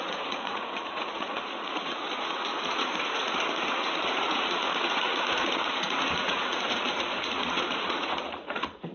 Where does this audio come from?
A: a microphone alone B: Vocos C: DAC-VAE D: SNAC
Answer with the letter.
B